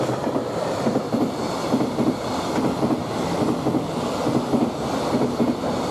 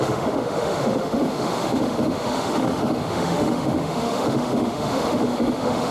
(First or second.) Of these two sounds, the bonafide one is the first